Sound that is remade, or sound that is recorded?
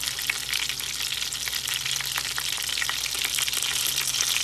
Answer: recorded